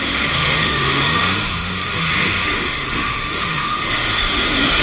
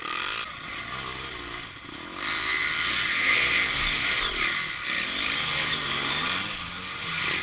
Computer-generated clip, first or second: first